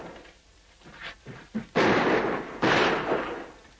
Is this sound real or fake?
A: fake